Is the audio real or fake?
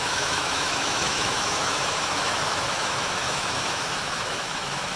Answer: fake